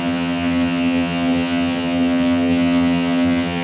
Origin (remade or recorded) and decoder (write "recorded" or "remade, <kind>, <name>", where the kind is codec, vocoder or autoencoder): remade, vocoder, HiFi-GAN